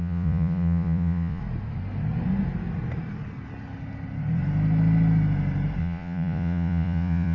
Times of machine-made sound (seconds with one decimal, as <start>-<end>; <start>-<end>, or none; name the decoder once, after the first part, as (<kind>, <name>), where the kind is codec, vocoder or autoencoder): 0.0-1.4 (vocoder, Vocos); 5.8-7.3